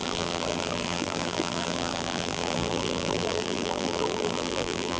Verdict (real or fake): fake